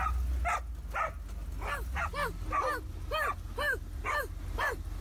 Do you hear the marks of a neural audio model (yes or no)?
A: no